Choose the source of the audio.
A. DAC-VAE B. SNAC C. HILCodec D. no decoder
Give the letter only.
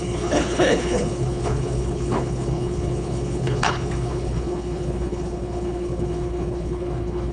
C